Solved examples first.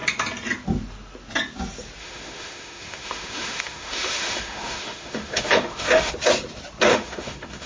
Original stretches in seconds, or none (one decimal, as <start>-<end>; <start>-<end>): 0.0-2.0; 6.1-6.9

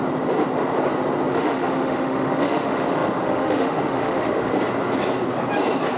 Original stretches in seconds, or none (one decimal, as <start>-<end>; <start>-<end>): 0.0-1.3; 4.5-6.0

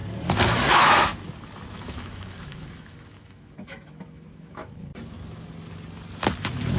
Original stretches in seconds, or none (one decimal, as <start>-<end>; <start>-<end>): 0.0-0.7; 1.1-1.7; 4.9-6.8

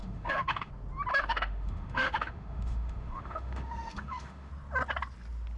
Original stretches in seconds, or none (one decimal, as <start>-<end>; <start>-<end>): 0.7-1.1; 4.5-5.6

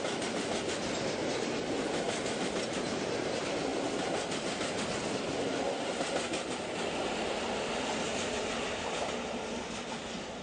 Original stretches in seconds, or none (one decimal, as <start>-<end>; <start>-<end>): 0.0-10.4

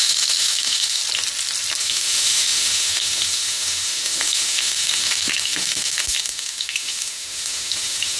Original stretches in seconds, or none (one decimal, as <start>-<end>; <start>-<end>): 1.0-1.8

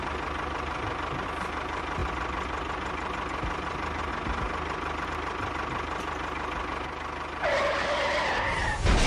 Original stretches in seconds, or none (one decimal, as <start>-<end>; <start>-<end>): 0.0-9.1